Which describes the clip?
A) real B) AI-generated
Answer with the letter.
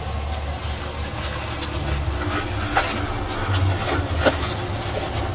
A